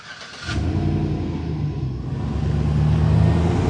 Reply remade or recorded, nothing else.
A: recorded